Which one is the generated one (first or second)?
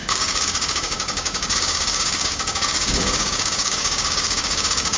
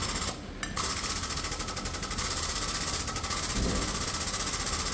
first